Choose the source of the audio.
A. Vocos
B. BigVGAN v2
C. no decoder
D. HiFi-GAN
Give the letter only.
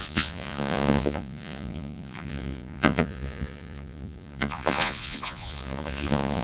A